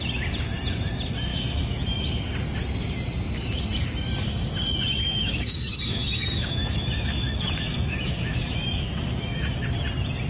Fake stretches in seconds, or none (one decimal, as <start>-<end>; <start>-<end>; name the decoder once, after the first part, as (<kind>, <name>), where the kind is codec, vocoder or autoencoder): 1.3-2.0 (autoencoder, DAC-VAE); 5.0-9.7